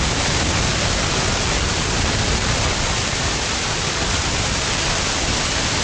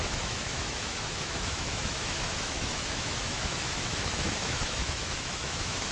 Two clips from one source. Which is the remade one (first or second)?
second